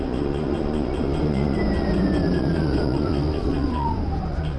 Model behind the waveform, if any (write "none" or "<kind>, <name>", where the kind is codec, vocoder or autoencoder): vocoder, Vocos